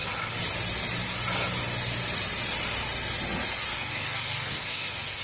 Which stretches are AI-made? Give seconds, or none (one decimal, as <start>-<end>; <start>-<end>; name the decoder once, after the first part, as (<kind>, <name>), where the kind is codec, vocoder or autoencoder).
3.7-5.2 (codec, SNAC)